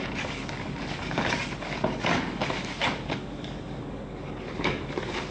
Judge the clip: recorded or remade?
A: remade